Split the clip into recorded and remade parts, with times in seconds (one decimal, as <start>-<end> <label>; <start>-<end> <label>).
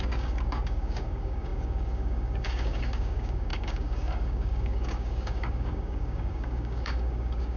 0.0-7.6 remade